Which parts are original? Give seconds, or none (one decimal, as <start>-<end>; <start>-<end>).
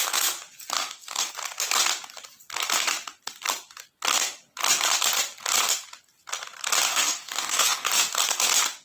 0.0-0.8; 1.3-6.9; 7.9-8.8